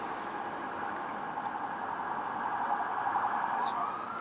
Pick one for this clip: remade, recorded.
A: recorded